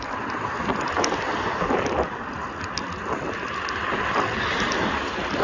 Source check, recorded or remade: recorded